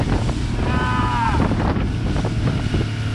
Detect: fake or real real